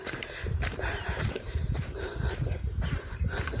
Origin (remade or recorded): remade